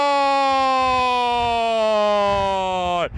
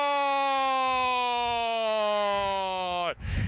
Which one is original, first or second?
first